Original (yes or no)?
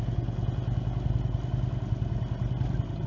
yes